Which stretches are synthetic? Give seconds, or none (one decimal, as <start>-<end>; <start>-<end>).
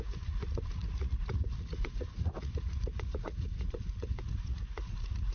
0.0-5.3